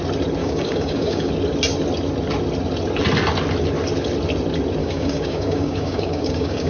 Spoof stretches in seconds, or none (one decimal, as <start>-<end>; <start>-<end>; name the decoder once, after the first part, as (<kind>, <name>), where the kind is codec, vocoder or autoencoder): 0.4-1.3 (codec, DAC); 4.8-6.7